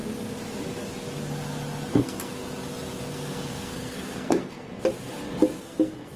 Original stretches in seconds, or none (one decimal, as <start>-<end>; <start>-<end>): 0.0-1.9; 2.4-3.1; 4.7-5.6